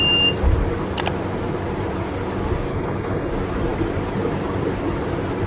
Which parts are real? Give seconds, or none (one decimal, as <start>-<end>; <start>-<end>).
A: 0.0-2.7; 3.3-5.5